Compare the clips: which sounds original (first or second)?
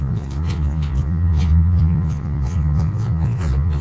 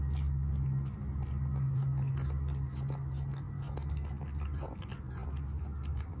second